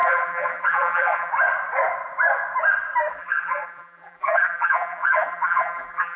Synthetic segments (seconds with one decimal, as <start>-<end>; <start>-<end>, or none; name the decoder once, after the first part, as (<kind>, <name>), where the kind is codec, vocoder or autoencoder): 0.0-1.3 (vocoder, BigVGAN v2); 3.1-6.2